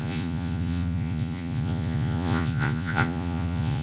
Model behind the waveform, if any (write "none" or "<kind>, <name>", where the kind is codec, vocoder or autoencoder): vocoder, Vocos